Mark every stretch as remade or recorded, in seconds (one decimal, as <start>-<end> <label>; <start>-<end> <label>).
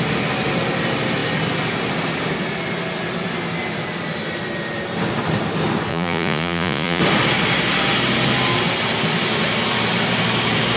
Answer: 0.0-5.9 recorded; 5.9-7.0 remade; 7.0-10.8 recorded